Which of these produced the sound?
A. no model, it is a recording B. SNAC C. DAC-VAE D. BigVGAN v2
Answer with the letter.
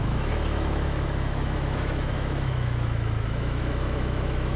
C